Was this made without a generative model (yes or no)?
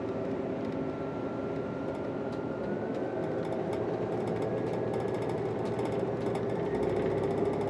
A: yes